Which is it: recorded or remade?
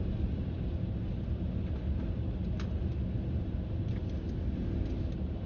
recorded